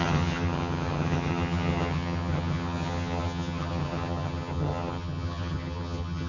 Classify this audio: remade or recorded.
remade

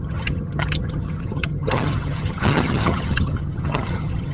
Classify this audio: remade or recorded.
remade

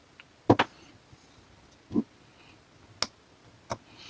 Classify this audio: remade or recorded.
recorded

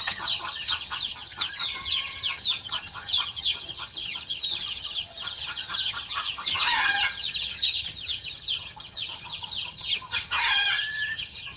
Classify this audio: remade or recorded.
remade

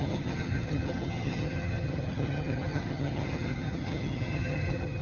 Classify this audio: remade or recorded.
remade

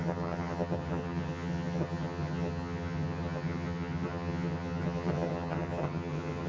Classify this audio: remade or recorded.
remade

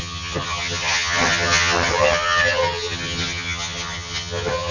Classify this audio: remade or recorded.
remade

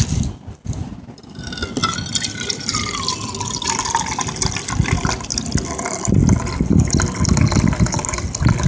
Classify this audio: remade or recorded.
recorded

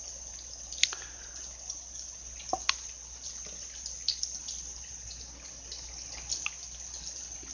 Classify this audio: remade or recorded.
recorded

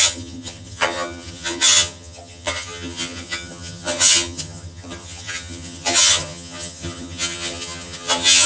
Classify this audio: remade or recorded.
remade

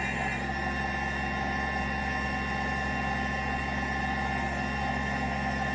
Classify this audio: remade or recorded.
recorded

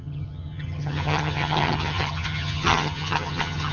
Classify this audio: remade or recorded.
remade